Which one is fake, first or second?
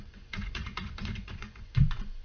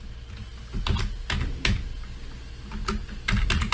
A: first